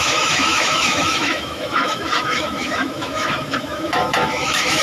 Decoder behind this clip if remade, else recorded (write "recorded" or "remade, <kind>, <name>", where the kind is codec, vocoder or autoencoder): remade, autoencoder, DAC-VAE